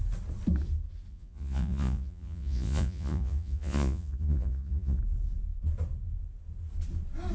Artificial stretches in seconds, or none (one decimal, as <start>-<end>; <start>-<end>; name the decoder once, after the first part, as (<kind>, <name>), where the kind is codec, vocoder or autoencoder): 1.1-5.0 (vocoder, Vocos)